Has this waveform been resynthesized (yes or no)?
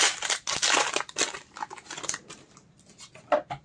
no